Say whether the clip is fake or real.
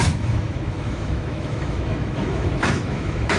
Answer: fake